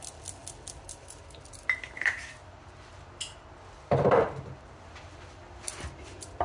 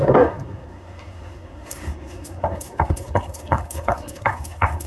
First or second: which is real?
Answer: first